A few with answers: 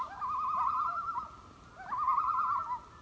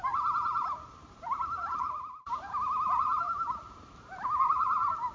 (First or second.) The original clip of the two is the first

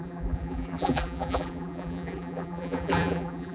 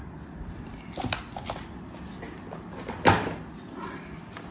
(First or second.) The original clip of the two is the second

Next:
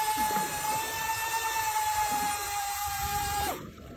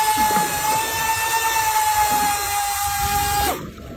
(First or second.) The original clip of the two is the second